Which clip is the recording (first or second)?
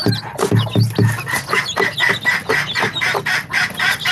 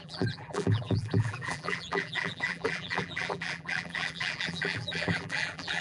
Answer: first